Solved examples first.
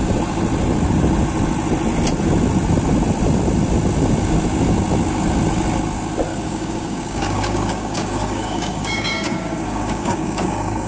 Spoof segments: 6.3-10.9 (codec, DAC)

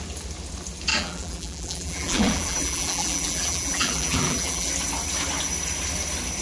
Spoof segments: 0.9-4.7 (vocoder, BigVGAN v2)

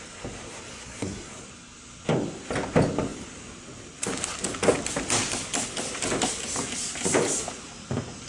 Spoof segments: 0.7-1.3 (codec, SNAC)

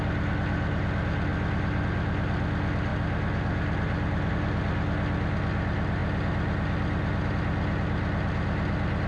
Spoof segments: none

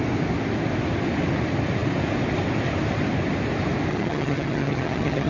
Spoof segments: 3.9-5.3 (vocoder, HiFi-GAN)

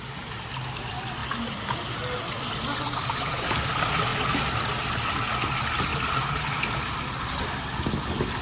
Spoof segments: none

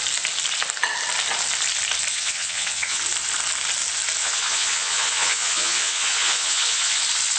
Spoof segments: 2.1-3.0 (vocoder, Vocos); 4.2-7.0